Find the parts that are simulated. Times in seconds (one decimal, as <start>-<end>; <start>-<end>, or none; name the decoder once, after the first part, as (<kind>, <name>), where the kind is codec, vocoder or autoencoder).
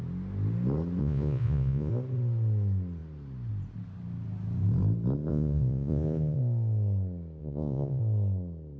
1.0-1.9 (vocoder, Vocos); 5.3-6.4; 7.4-8.0